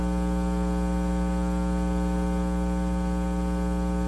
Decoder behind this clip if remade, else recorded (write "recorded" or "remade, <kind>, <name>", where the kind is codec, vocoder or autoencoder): recorded